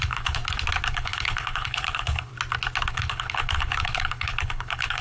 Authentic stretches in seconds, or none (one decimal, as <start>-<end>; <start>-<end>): 0.4-0.9; 2.3-2.9